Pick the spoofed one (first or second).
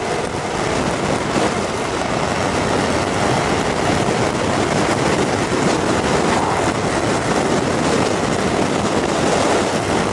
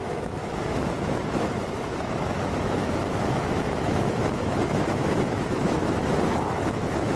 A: second